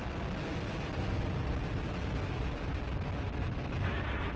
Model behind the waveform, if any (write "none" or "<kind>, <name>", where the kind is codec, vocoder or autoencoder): none